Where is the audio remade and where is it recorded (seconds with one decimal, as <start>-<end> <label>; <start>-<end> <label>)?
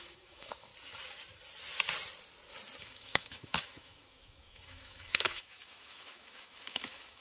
0.0-0.7 remade; 0.7-2.8 recorded; 2.8-7.2 remade